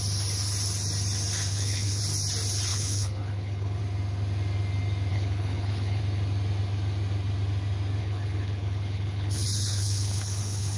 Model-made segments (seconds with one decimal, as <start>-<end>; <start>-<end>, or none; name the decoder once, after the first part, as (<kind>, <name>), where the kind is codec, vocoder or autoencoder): 1.5-2.0 (codec, HILCodec); 2.7-3.8; 5.1-6.0; 8.0-10.8